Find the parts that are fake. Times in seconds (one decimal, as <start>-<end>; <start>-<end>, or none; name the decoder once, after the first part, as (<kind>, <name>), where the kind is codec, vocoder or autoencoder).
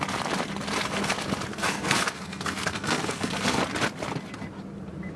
1.5-3.6 (codec, SNAC)